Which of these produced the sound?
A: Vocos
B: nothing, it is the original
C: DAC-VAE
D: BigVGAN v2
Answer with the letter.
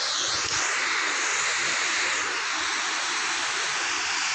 B